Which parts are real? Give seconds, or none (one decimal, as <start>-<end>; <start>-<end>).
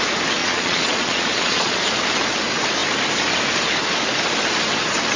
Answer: 0.0-0.4; 1.8-5.2